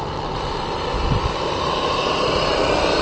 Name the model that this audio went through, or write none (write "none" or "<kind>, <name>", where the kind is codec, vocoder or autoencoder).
none